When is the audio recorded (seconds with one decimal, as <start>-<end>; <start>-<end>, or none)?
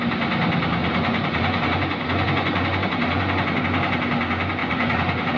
0.0-0.8; 3.6-4.6